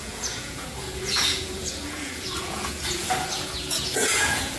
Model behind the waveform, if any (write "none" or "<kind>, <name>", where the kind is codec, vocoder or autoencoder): vocoder, Vocos